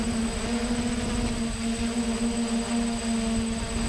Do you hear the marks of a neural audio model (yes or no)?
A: no